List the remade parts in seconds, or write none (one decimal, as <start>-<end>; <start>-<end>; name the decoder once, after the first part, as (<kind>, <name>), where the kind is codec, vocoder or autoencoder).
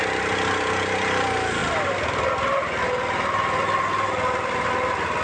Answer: none